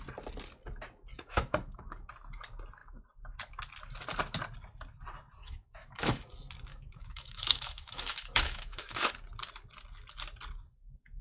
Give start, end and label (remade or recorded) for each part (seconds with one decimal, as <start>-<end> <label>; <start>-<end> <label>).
0.0-1.1 recorded; 1.1-1.8 remade; 1.8-5.4 recorded; 5.4-6.3 remade; 6.3-6.7 recorded; 6.7-9.1 remade; 9.1-11.2 recorded

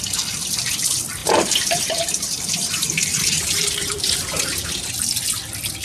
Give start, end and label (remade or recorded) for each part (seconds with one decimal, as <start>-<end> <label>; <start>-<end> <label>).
0.0-1.2 recorded; 1.2-4.7 remade; 4.7-5.8 recorded

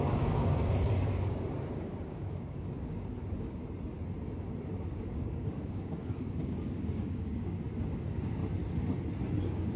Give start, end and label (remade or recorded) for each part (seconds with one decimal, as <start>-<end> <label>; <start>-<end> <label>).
0.0-3.6 remade; 3.6-4.9 recorded; 4.9-8.4 remade; 8.4-9.4 recorded; 9.4-9.8 remade

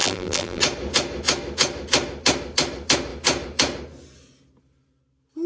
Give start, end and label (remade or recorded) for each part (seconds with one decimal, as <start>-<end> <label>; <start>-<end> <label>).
0.0-0.6 remade; 0.6-5.5 recorded